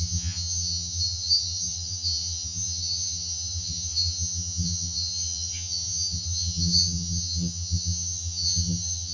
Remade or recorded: remade